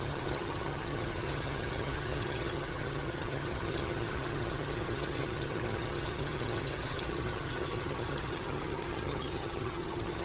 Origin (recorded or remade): remade